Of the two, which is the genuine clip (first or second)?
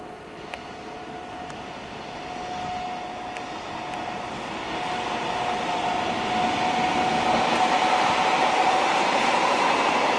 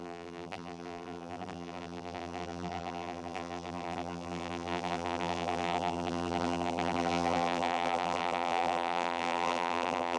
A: first